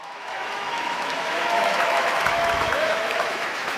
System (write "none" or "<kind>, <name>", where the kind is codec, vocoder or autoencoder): autoencoder, DAC-VAE